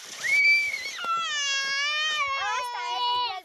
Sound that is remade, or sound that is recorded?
recorded